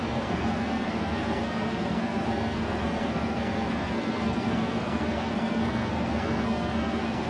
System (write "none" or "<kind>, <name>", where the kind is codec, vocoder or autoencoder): codec, SNAC